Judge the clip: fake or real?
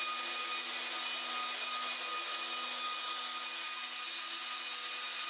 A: real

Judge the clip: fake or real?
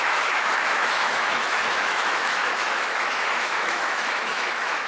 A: fake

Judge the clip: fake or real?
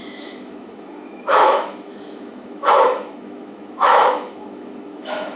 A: fake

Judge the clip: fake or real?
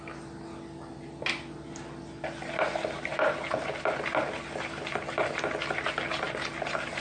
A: real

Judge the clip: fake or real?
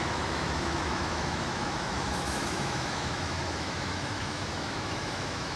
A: fake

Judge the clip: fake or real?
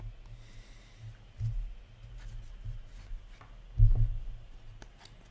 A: real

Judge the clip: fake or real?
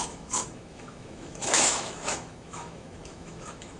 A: fake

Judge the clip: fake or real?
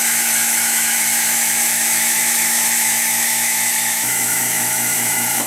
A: fake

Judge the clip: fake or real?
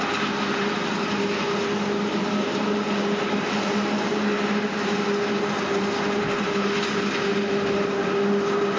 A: real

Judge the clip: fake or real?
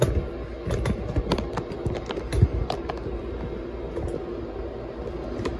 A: real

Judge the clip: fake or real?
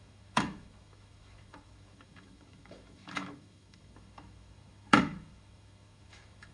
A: fake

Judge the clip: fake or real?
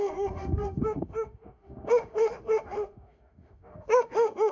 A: fake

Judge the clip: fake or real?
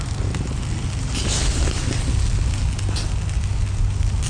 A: real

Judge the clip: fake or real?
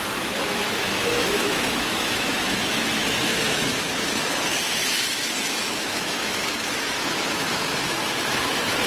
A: fake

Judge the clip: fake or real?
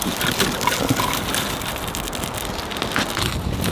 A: real